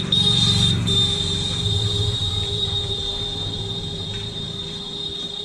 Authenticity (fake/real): fake